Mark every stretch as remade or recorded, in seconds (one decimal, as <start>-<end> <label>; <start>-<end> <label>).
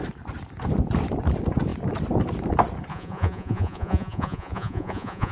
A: 0.0-2.9 recorded; 2.9-5.3 remade